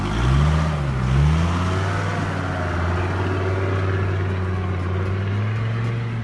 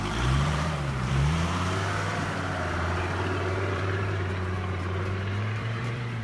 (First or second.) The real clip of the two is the first